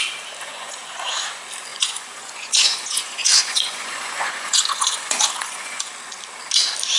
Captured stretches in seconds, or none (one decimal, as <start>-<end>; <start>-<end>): 0.0-0.5; 1.1-1.7; 5.9-7.0